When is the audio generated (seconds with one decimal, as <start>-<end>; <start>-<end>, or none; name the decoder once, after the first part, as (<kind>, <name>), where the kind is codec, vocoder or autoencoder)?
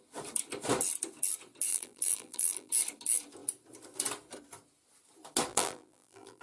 1.7-2.7 (vocoder, BigVGAN v2); 5.5-6.4